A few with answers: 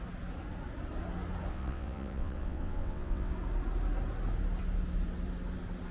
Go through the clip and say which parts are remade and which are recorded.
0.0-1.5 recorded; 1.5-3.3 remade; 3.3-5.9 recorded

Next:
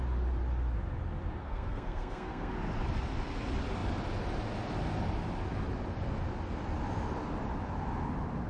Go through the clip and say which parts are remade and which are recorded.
0.0-1.4 recorded; 1.4-2.5 remade; 2.5-8.5 recorded